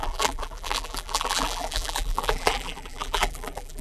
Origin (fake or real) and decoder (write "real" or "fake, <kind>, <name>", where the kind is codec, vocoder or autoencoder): fake, vocoder, BigVGAN v2